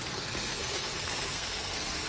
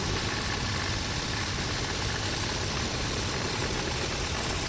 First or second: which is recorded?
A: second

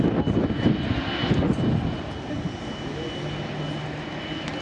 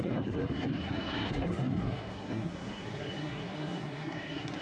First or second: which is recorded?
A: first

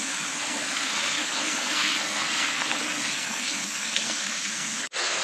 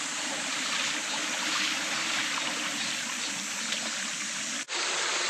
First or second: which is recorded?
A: second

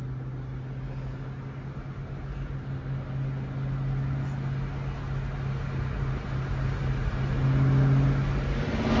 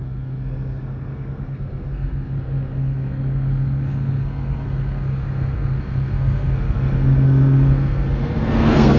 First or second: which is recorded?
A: first